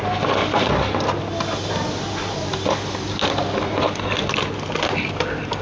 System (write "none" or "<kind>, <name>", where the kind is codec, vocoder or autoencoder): none